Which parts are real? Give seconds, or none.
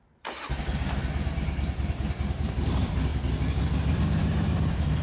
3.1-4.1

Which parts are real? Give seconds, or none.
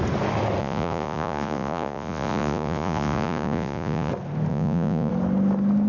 0.0-0.6; 4.1-4.5; 5.1-5.9